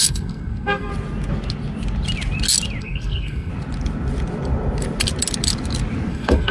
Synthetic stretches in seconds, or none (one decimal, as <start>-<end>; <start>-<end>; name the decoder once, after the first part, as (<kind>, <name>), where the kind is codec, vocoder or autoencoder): 0.0-0.9 (codec, SNAC); 2.8-3.5; 6.1-6.5